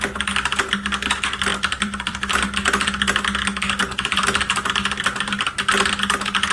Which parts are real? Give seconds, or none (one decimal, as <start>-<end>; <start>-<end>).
0.0-1.5; 2.3-3.8; 5.5-6.5